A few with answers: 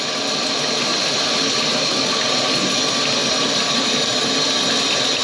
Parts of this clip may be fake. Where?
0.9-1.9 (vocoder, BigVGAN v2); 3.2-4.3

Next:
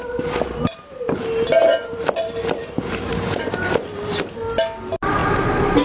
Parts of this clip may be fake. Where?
2.6-3.7 (vocoder, BigVGAN v2); 5.2-5.8

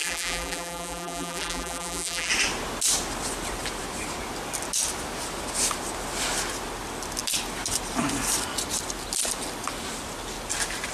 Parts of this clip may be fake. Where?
0.0-2.3 (vocoder, BigVGAN v2)

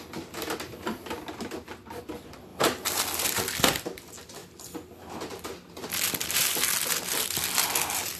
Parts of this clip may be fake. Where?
2.5-3.0 (vocoder, BigVGAN v2)

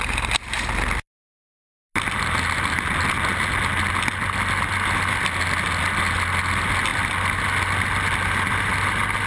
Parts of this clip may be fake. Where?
none

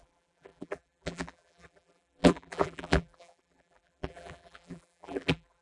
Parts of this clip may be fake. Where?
0.0-5.6 (vocoder, BigVGAN v2)